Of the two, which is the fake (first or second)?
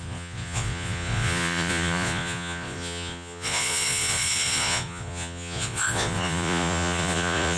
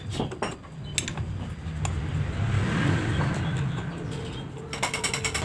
first